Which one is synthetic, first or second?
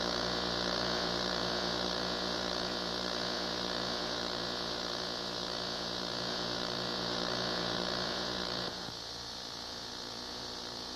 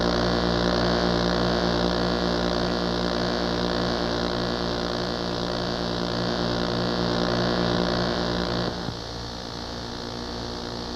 first